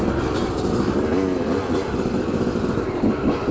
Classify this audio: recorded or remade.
recorded